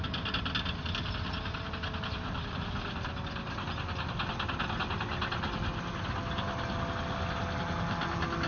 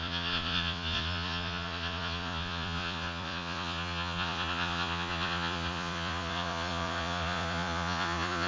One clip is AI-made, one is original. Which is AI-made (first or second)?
second